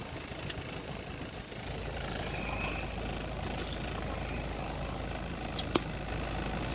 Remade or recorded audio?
recorded